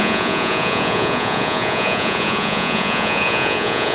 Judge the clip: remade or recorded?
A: remade